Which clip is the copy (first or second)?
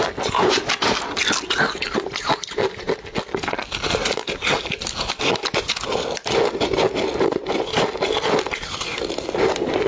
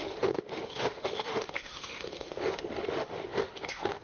second